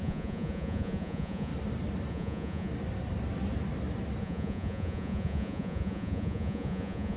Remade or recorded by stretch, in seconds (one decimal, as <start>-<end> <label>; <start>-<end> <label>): 0.0-1.5 remade; 1.5-2.1 recorded; 2.1-2.7 remade; 2.7-4.2 recorded; 4.2-7.2 remade